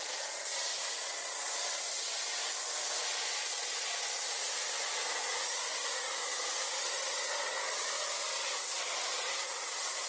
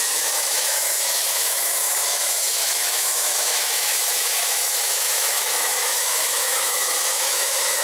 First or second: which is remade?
second